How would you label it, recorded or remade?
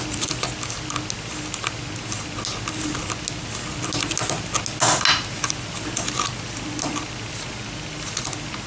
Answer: recorded